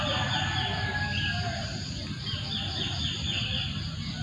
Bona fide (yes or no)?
yes